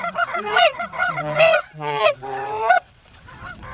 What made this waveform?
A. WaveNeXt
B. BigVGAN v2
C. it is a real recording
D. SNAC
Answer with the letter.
A